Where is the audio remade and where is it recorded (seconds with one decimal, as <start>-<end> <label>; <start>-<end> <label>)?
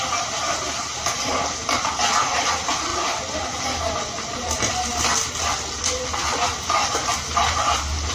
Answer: 0.0-8.1 recorded